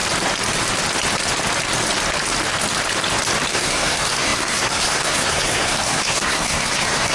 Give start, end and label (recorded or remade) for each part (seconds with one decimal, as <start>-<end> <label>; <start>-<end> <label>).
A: 0.0-3.5 recorded; 3.5-7.1 remade